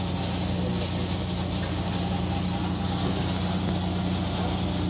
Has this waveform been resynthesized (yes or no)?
no